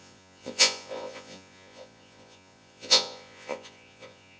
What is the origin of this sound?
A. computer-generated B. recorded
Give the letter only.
A